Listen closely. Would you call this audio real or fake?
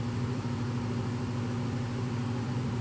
fake